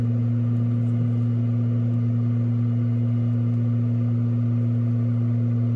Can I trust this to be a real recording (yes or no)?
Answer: yes